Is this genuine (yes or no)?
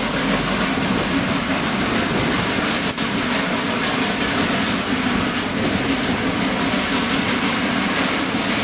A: yes